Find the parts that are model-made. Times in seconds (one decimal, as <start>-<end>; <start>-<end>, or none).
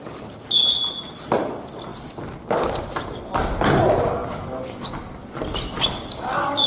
none